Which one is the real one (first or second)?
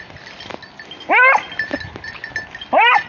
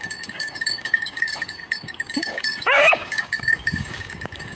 first